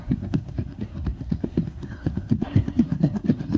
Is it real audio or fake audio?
fake